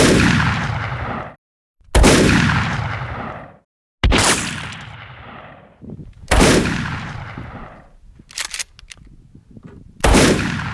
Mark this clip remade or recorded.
recorded